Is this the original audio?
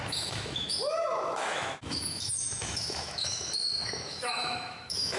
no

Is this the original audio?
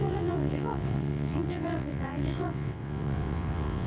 no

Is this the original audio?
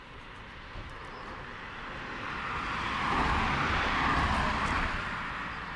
yes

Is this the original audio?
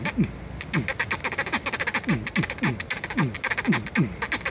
yes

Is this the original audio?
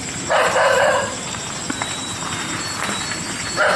no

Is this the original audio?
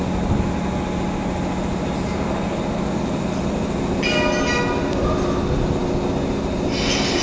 yes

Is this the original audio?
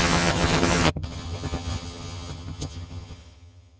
no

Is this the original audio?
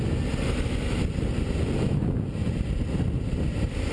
yes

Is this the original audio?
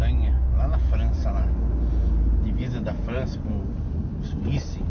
yes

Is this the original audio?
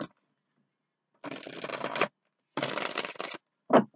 yes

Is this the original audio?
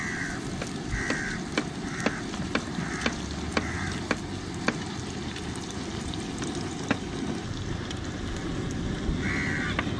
yes